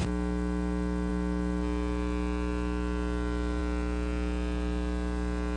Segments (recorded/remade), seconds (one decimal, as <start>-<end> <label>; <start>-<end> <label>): 0.0-5.6 recorded